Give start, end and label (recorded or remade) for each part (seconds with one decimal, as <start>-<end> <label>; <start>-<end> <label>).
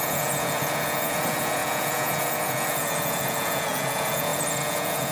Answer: 0.0-5.1 remade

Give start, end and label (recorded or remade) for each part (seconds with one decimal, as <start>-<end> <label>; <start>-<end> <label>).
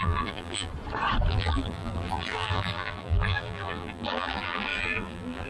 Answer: 0.0-0.7 remade; 0.7-1.3 recorded; 1.3-5.5 remade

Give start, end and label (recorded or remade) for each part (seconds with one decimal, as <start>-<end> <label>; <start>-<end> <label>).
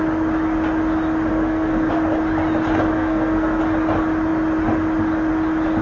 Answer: 0.0-1.3 recorded; 1.3-1.9 remade; 1.9-2.9 recorded; 2.9-3.6 remade; 3.6-5.8 recorded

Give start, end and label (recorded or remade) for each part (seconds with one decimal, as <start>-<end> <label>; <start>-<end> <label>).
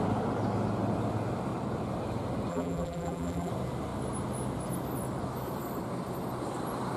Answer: 0.0-2.5 recorded; 2.5-3.5 remade; 3.5-7.0 recorded